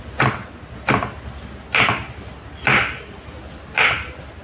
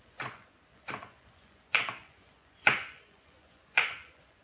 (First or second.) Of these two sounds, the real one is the first